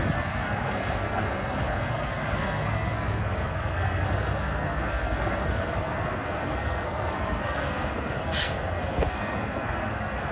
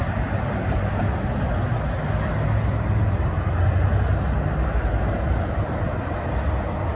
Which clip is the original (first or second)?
second